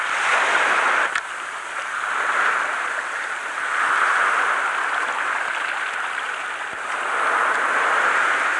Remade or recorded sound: recorded